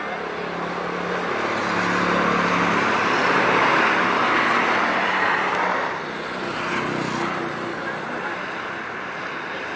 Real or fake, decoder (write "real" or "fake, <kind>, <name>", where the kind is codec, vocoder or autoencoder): real